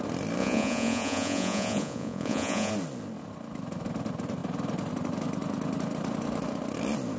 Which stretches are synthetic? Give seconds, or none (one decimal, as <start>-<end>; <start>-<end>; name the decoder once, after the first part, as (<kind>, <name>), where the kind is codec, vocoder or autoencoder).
0.4-2.7 (vocoder, Vocos)